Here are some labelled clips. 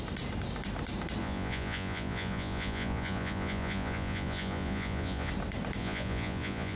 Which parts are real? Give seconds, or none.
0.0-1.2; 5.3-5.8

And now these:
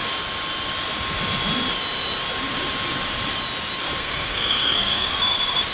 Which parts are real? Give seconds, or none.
0.0-4.0; 5.1-5.7

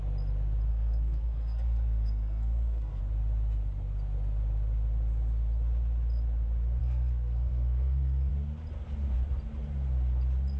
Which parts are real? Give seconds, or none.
0.0-0.7; 3.0-6.8; 8.3-10.6

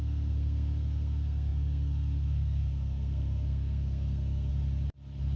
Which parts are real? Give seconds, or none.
4.5-5.4